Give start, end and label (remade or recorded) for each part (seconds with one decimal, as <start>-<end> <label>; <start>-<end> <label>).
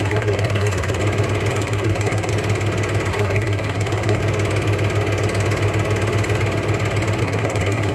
0.0-1.0 remade; 1.0-1.5 recorded; 1.5-2.3 remade; 2.3-3.1 recorded; 3.1-4.2 remade; 4.2-7.2 recorded; 7.2-7.9 remade